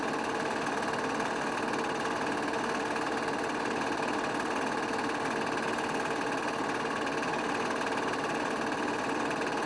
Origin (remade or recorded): recorded